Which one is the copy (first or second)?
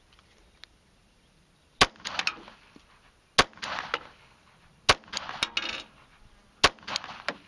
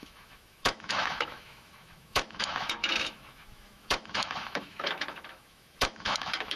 second